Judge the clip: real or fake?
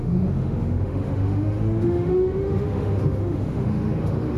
fake